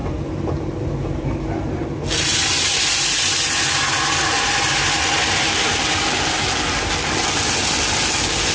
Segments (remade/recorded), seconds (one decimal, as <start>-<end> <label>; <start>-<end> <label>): 0.0-2.8 remade; 2.8-8.5 recorded